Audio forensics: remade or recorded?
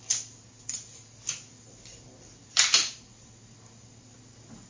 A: recorded